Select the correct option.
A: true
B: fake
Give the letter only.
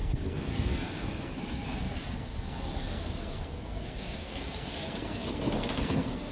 B